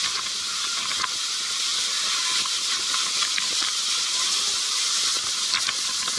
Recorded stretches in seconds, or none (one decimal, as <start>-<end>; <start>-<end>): 0.0-6.2